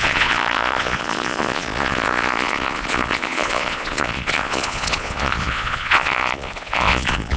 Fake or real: fake